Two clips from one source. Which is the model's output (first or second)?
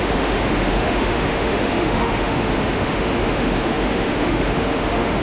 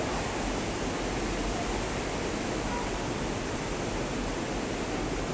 first